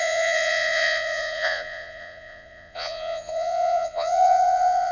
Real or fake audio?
fake